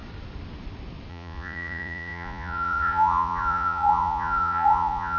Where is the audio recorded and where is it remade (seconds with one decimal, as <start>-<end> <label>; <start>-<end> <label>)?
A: 0.0-1.1 recorded; 1.1-5.2 remade